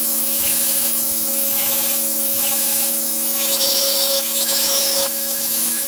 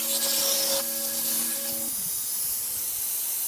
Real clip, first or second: second